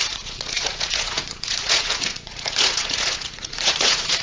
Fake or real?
fake